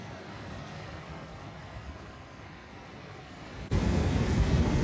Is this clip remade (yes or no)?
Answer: yes